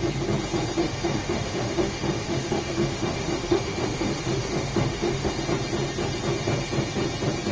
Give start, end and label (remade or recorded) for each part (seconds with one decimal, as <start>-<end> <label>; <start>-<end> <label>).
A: 0.0-0.8 recorded; 0.8-5.3 remade; 5.3-7.5 recorded